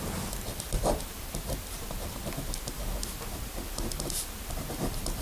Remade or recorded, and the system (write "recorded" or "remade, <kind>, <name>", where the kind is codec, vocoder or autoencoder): recorded